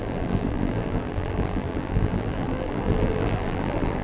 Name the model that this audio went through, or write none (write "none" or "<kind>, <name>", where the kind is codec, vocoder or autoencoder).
vocoder, BigVGAN v2